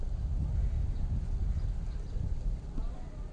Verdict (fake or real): real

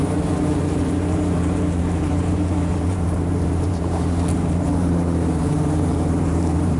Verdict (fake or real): fake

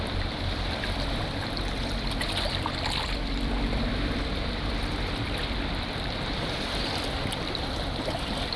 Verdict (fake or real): fake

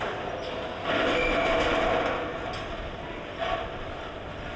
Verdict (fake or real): real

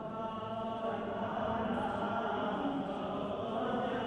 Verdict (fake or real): fake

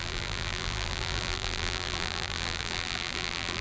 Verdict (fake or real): fake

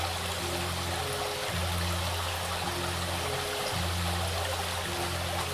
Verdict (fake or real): real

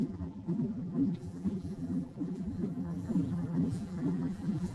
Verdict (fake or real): fake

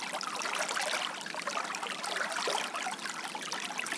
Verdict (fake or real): fake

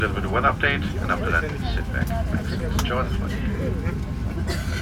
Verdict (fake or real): real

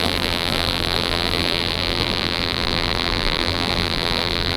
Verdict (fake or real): fake